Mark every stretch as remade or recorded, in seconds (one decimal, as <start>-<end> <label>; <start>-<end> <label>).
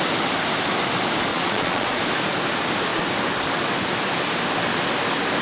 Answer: 0.0-1.3 recorded; 1.3-2.0 remade; 2.0-5.4 recorded